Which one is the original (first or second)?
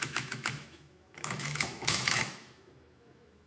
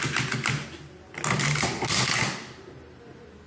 second